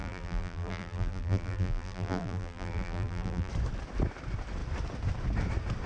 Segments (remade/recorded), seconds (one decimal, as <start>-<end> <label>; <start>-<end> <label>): 0.0-3.5 remade; 3.5-5.9 recorded